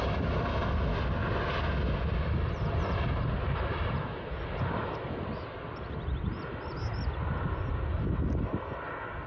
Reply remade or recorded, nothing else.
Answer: recorded